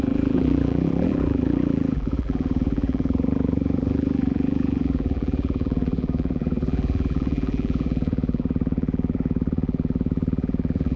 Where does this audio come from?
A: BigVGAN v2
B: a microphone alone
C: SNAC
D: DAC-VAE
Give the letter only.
A